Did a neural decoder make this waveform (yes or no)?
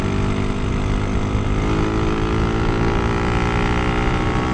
no